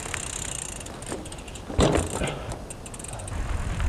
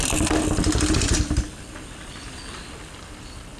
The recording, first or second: first